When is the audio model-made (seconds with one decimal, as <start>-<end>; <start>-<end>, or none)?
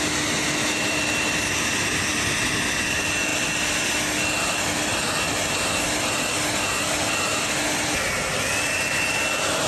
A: none